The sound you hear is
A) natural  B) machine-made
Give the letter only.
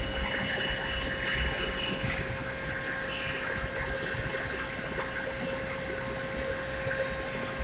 A